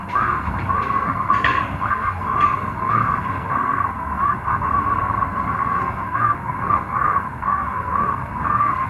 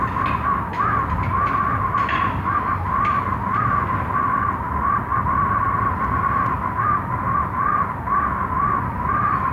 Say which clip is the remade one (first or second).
first